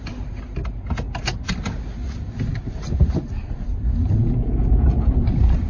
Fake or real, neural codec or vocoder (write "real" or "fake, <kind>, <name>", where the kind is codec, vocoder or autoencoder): real